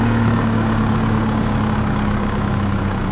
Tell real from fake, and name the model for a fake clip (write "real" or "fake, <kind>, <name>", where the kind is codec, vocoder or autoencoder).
fake, codec, DAC